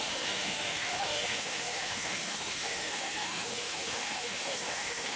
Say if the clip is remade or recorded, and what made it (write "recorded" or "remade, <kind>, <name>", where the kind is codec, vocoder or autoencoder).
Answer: remade, autoencoder, DAC-VAE